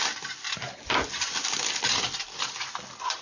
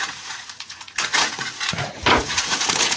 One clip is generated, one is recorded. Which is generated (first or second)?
second